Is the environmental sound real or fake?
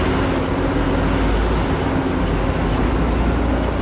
real